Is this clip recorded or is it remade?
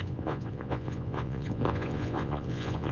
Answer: remade